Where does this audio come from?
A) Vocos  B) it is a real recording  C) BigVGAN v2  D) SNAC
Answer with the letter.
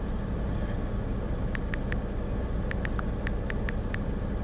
B